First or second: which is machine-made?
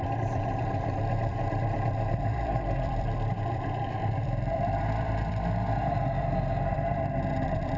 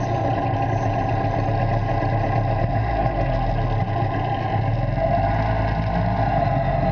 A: first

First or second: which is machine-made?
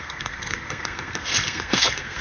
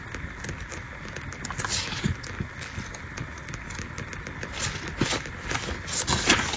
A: first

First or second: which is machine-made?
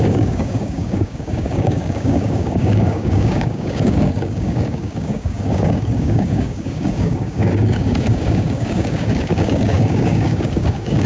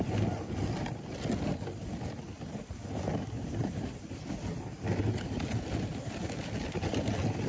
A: first